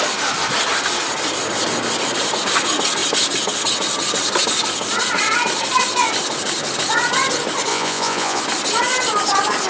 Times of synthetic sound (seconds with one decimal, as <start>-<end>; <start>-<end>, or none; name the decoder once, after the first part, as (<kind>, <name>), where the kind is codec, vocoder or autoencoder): 7.7-8.4 (vocoder, Vocos)